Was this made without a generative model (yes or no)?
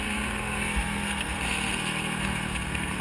no